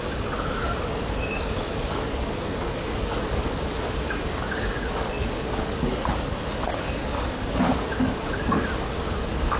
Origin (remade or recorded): remade